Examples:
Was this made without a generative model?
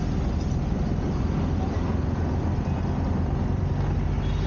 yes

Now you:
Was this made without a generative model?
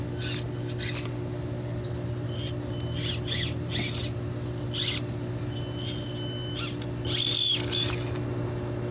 yes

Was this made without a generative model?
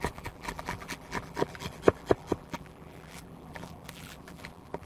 no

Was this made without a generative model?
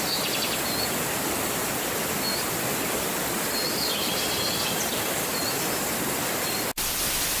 yes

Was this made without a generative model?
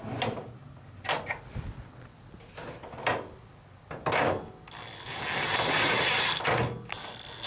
yes